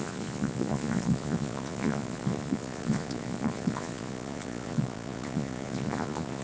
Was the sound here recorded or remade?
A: remade